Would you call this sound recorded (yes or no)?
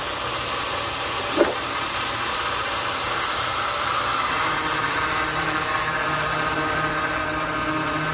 no